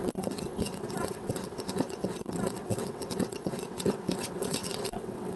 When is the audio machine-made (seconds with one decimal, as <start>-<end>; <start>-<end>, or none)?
0.0-5.4